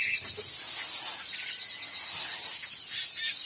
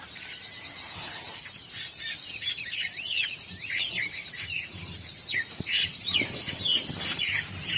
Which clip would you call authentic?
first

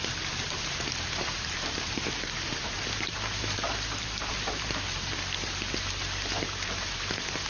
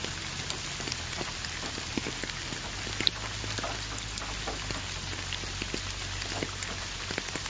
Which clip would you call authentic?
second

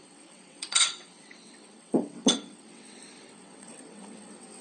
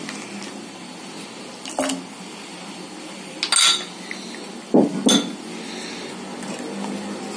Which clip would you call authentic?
second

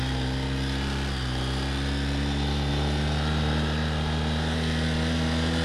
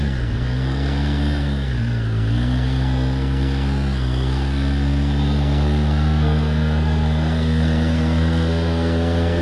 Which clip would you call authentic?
first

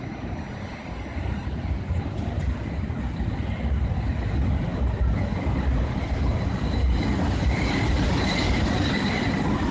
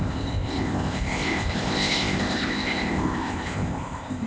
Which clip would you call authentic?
first